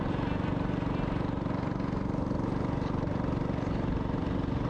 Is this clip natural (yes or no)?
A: yes